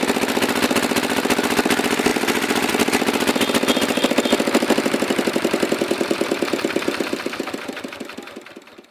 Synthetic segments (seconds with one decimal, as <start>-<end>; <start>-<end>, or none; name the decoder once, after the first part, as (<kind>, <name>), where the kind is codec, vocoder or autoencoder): none